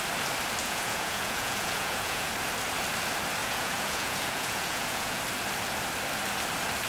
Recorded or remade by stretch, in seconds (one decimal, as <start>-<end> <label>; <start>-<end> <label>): 0.0-0.6 recorded; 0.6-2.3 remade; 2.3-3.4 recorded; 3.4-5.2 remade; 5.2-6.9 recorded